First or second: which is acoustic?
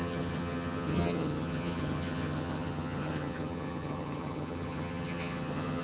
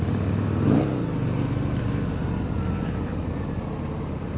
second